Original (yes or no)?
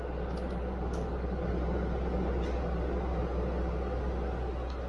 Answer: yes